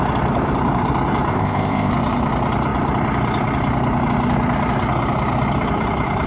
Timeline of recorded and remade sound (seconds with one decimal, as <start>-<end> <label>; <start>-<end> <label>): 0.0-1.3 recorded; 1.3-1.9 remade; 1.9-6.3 recorded